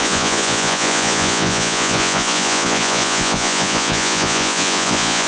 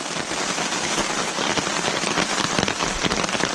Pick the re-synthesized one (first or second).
first